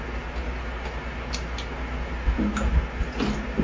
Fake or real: real